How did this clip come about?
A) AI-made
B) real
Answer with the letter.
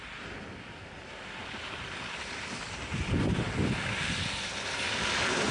B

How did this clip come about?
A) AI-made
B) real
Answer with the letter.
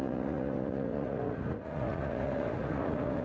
A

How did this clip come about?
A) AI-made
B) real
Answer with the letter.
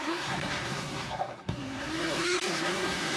A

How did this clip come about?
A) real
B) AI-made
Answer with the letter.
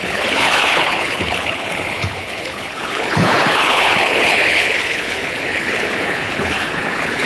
B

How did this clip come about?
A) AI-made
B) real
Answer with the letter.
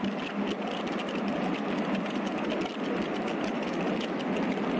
B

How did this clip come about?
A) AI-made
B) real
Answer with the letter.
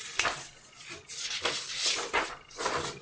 B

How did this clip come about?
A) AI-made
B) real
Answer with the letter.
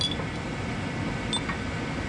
B